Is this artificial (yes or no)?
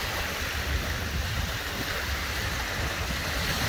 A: no